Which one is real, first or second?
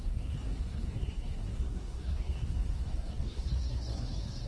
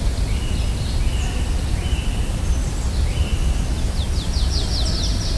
second